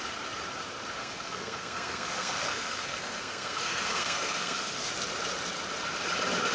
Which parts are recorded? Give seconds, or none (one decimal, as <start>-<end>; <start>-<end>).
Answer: 0.0-1.0; 4.9-6.5